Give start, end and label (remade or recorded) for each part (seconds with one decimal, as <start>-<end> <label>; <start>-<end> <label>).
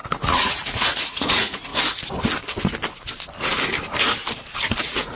0.0-1.7 remade; 1.7-4.8 recorded; 4.8-5.2 remade